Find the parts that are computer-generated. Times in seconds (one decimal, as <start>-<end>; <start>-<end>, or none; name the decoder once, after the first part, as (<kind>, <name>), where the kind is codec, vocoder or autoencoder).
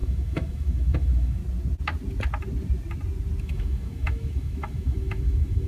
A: 0.0-1.4 (autoencoder, DAC-VAE); 3.4-5.7